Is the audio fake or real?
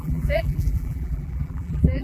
fake